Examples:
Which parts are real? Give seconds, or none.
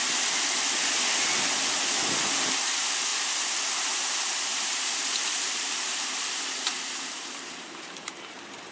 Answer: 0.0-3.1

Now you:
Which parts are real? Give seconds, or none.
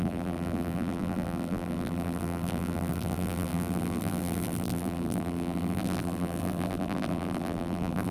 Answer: none